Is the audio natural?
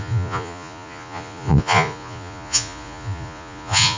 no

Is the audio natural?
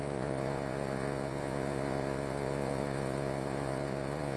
no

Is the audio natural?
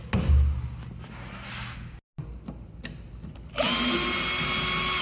yes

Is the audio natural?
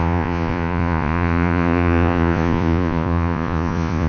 no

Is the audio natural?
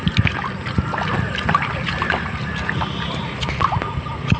yes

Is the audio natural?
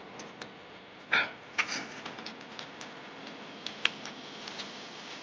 yes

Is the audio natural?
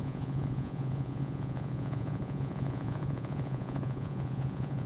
no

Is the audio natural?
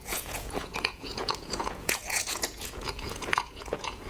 no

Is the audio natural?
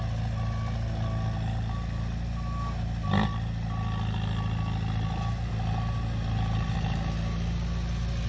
yes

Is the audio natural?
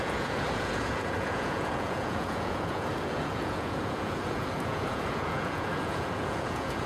no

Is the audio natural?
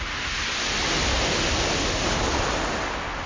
yes